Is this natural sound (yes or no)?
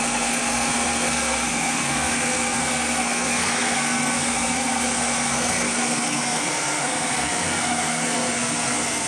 no